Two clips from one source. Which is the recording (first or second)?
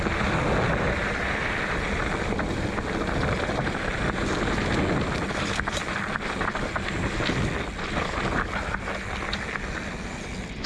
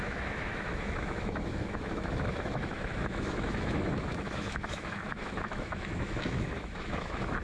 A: first